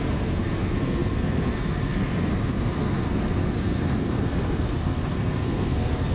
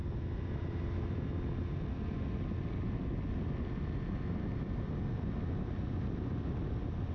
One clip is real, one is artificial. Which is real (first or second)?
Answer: second